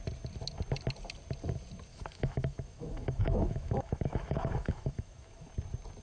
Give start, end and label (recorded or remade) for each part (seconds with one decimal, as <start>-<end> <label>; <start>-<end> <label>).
0.0-1.9 recorded; 1.9-5.5 remade; 5.5-6.0 recorded